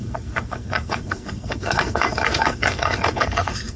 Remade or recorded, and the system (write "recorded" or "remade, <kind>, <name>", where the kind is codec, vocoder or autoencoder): remade, codec, SNAC